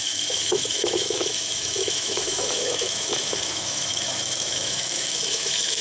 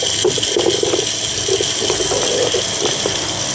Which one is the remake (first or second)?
first